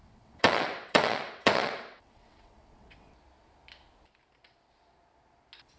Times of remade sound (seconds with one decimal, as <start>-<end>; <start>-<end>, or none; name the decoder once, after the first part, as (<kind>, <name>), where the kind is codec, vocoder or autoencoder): 0.0-3.1 (vocoder, WaveNeXt)